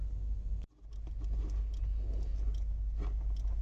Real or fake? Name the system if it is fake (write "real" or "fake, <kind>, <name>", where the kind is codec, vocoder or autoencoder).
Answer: real